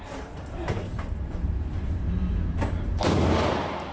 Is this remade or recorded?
remade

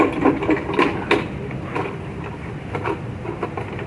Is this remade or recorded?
recorded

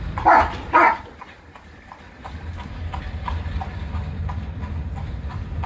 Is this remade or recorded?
recorded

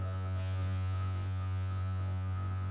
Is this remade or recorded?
remade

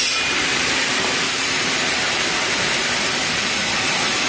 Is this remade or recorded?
remade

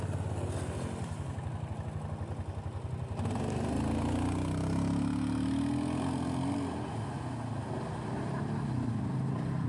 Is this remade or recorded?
recorded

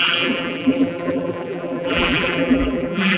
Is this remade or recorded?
remade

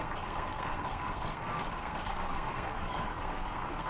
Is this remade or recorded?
remade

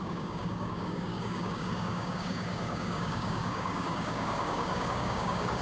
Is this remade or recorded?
remade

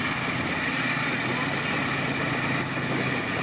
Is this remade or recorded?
recorded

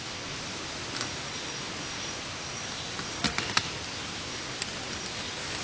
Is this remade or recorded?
recorded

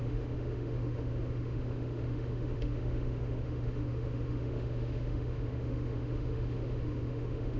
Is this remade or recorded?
remade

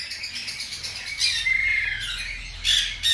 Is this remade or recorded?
recorded